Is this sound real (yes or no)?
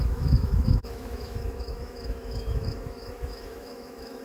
no